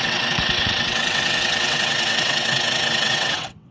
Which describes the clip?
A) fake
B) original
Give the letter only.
A